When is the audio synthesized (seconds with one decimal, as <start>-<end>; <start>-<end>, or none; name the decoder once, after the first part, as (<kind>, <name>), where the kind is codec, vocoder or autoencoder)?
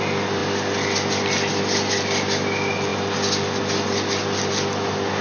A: none